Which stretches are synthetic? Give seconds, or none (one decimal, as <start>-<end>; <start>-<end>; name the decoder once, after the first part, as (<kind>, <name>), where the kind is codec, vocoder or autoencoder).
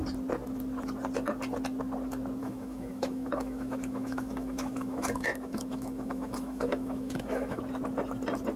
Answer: 2.4-7.6 (autoencoder, DAC-VAE)